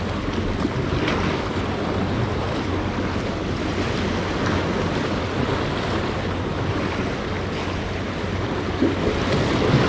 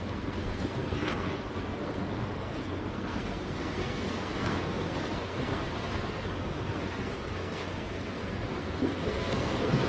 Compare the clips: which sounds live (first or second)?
first